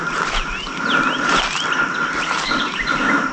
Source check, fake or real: real